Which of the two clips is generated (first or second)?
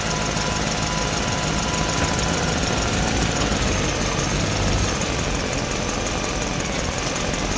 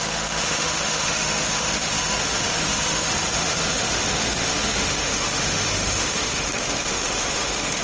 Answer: second